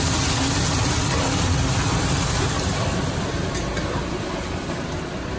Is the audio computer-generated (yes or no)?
yes